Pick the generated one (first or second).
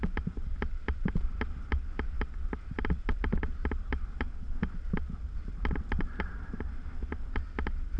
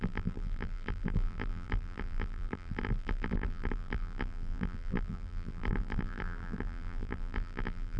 second